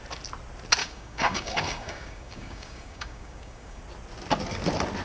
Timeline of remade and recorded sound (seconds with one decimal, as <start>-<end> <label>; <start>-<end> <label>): 0.0-0.8 recorded; 0.8-3.8 remade; 3.8-5.0 recorded